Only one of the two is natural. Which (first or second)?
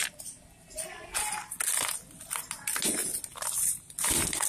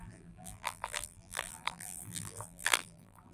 first